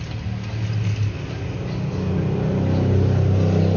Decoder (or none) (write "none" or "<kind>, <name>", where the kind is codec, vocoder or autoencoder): none